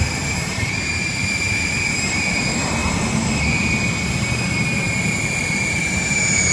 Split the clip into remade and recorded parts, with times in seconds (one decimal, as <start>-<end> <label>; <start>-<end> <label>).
0.0-2.8 remade; 2.8-4.1 recorded; 4.1-6.5 remade